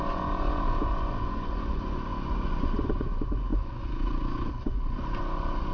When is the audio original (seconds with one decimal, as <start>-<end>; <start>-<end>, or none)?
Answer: none